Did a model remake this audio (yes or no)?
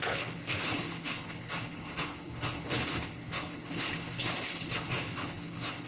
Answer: yes